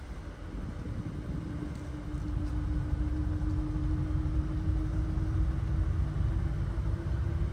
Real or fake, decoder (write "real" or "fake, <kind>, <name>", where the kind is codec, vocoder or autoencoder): real